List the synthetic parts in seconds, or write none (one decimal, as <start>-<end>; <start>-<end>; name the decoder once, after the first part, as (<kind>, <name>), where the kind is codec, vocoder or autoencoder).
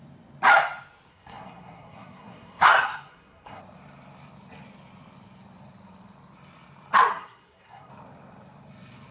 1.1-3.6 (codec, SNAC); 7.1-7.9